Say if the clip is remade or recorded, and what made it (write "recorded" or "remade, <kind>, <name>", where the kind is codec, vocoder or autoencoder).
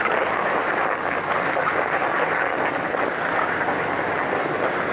recorded